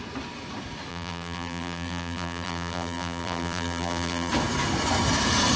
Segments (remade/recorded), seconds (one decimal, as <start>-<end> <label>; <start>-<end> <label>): 0.0-0.9 recorded; 0.9-4.3 remade; 4.3-5.6 recorded

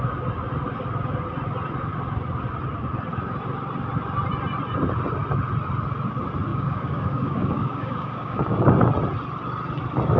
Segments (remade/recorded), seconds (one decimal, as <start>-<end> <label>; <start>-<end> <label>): 0.0-6.5 recorded; 6.5-8.7 remade; 8.7-10.2 recorded

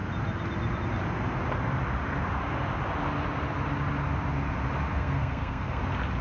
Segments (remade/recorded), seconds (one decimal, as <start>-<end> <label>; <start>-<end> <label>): 0.0-4.9 recorded; 4.9-5.8 remade; 5.8-6.2 recorded

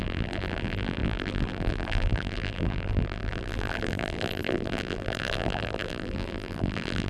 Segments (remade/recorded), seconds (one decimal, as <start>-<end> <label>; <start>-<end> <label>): 0.0-7.1 remade